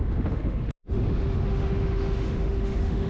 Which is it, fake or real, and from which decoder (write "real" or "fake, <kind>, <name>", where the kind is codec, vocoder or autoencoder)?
fake, autoencoder, DAC-VAE